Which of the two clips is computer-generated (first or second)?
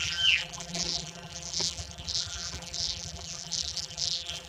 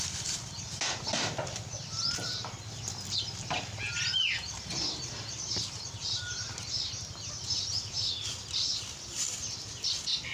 first